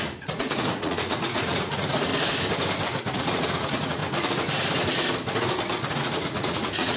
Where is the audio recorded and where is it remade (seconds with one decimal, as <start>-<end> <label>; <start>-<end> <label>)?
0.0-2.1 remade; 2.1-3.0 recorded; 3.0-4.0 remade; 4.0-5.9 recorded; 5.9-7.0 remade